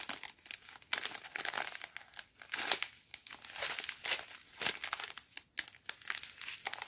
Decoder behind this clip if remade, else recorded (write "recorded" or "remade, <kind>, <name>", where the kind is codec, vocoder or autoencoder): recorded